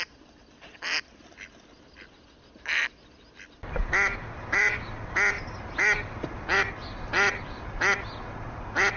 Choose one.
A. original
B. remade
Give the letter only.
A